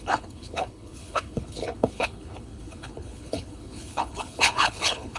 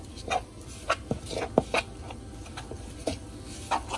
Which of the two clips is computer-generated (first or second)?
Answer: first